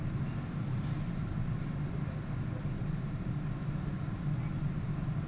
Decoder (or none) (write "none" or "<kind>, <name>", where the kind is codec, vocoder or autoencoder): none